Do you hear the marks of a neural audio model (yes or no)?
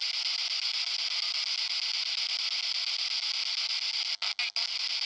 no